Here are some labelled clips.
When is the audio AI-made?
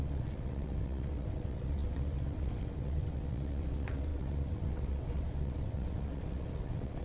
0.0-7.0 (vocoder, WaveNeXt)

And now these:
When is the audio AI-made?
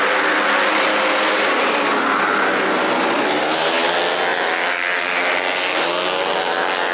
4.3-5.0 (vocoder, BigVGAN v2)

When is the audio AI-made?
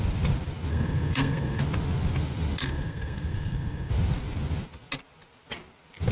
0.7-1.6 (codec, SNAC); 2.6-3.9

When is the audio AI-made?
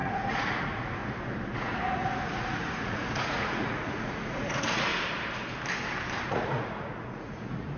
0.0-1.0 (vocoder, Vocos); 1.5-4.9; 6.2-7.8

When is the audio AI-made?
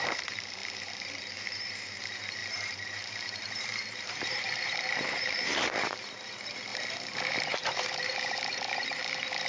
0.0-9.5 (vocoder, BigVGAN v2)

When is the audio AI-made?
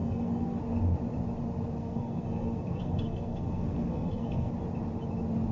0.0-0.6 (codec, SNAC); 1.8-4.5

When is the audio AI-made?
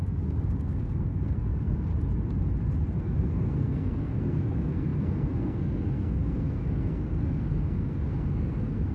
0.0-1.9 (codec, SNAC); 3.0-8.9